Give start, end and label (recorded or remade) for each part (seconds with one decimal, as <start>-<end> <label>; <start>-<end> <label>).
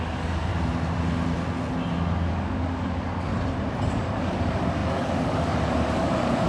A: 0.0-0.5 remade; 0.5-2.3 recorded; 2.3-3.3 remade; 3.3-3.9 recorded; 3.9-6.5 remade